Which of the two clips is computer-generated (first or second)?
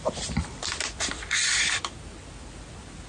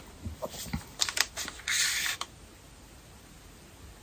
second